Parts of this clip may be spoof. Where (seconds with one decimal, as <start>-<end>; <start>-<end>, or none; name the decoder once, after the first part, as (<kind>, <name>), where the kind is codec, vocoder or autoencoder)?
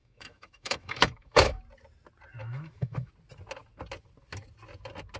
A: 0.0-1.6 (autoencoder, DAC-VAE); 2.4-3.1